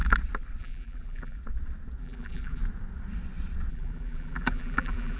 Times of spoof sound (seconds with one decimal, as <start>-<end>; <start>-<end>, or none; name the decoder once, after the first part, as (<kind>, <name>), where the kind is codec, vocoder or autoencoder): 0.6-1.4 (vocoder, BigVGAN v2); 2.0-2.6; 3.7-5.2